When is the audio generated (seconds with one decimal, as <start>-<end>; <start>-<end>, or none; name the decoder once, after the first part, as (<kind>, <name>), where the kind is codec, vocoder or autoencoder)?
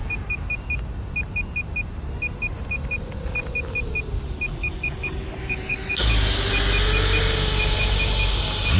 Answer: 4.6-6.5 (codec, DAC)